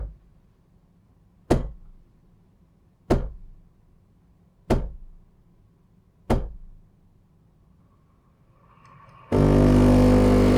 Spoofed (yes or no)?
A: no